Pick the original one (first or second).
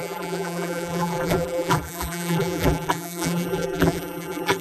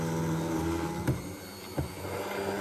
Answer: second